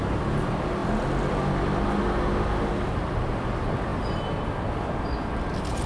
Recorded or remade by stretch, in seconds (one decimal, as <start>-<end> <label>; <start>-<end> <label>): 0.0-5.9 recorded